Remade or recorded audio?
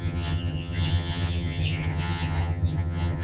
remade